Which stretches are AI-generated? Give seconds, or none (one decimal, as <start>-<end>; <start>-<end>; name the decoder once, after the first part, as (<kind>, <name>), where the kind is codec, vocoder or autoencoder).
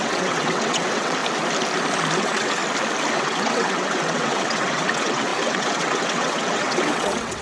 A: 0.0-1.2 (vocoder, WaveNeXt); 2.2-2.6; 3.1-7.4